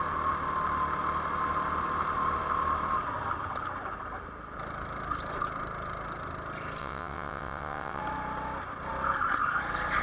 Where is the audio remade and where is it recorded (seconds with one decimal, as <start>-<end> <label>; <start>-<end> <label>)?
0.0-6.8 recorded; 6.8-8.0 remade; 8.0-10.0 recorded